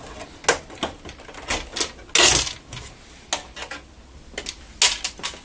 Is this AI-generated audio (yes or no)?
no